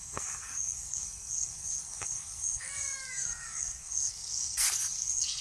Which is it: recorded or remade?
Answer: remade